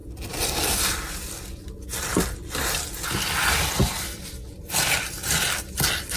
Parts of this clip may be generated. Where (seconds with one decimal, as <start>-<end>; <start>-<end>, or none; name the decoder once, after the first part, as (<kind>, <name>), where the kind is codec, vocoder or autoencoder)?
0.0-1.0 (vocoder, BigVGAN v2); 2.1-5.8